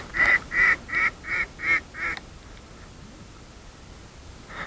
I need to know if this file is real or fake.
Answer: real